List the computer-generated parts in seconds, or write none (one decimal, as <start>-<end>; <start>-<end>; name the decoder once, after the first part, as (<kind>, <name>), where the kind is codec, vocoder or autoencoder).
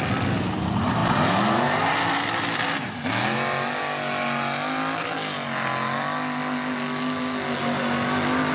none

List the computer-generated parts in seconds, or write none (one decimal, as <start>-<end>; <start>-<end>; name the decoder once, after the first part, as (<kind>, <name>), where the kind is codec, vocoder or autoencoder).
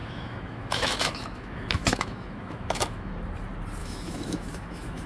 0.0-3.1 (autoencoder, DAC-VAE); 3.8-5.1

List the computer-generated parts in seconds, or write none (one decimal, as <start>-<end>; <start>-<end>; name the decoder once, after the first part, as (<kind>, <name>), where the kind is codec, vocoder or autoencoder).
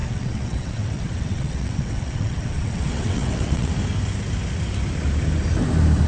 0.0-3.7 (vocoder, WaveNeXt)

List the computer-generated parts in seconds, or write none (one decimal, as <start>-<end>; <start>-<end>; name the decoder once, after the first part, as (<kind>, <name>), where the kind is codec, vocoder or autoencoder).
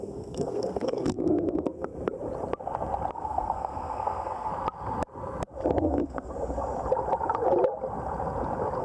0.0-1.9 (codec, SNAC); 3.1-4.5; 5.8-6.3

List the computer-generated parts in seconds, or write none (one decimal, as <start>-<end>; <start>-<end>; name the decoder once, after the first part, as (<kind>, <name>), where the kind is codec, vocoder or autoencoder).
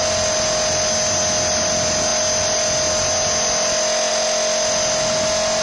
none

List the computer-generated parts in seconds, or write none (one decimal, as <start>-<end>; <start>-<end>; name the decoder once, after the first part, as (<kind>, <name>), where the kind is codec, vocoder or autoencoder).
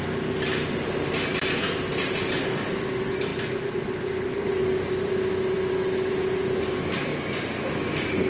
none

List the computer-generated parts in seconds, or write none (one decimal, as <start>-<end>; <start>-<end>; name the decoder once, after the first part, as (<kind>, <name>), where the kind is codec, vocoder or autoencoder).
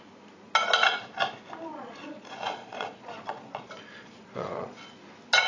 1.7-5.0 (vocoder, Vocos)